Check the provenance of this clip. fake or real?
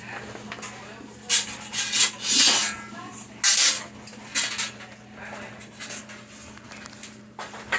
real